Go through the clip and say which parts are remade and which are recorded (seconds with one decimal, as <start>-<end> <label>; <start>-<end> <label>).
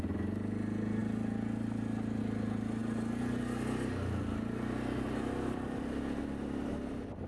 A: 0.0-7.3 recorded